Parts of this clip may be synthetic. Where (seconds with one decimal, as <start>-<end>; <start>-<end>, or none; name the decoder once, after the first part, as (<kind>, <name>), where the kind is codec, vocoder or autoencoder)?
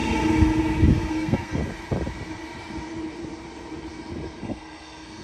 1.1-1.6 (codec, SNAC); 4.4-5.2